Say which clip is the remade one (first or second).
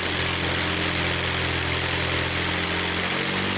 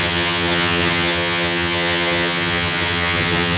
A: second